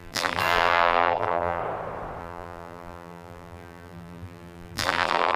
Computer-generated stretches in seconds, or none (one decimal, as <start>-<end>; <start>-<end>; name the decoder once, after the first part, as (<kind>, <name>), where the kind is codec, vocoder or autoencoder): 0.0-1.6 (vocoder, BigVGAN v2); 2.2-5.4